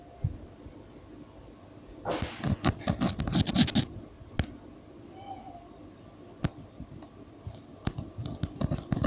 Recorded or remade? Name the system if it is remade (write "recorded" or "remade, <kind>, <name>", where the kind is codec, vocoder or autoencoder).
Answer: recorded